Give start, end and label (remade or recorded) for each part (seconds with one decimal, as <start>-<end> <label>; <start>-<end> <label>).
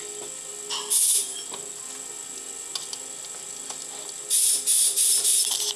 0.0-5.8 recorded